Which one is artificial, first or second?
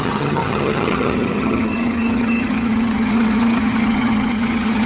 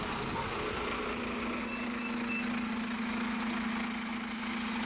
first